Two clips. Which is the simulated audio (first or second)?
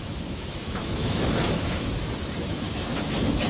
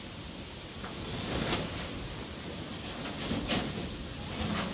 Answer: first